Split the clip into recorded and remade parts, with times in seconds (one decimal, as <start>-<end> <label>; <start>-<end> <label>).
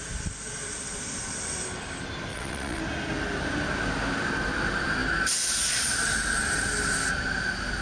0.0-2.3 recorded; 2.3-2.8 remade; 2.8-7.8 recorded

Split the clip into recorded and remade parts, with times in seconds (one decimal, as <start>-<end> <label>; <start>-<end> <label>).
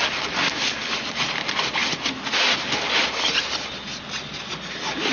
0.0-5.1 recorded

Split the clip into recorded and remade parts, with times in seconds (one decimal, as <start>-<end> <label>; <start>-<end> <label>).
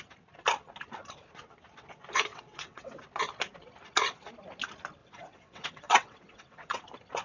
0.0-2.3 recorded; 2.3-3.0 remade; 3.0-5.0 recorded; 5.0-6.8 remade; 6.8-7.2 recorded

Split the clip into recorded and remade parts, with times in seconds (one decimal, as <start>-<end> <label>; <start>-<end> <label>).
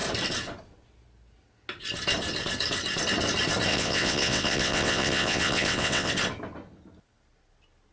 0.0-3.7 recorded; 3.7-6.1 remade; 6.1-7.9 recorded